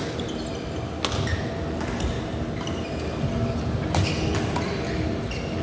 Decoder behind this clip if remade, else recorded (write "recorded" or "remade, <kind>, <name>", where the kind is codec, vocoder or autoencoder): recorded